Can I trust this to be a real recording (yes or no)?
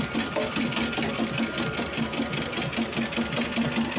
yes